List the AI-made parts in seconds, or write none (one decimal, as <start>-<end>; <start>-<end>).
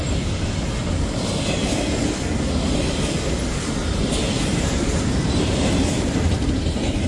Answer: 4.5-7.1